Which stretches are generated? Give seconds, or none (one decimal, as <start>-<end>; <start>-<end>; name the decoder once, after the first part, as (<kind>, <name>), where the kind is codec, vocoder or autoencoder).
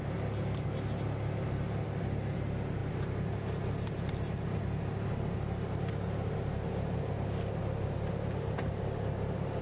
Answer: none